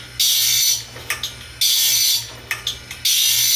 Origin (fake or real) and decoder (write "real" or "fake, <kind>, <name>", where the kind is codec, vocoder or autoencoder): real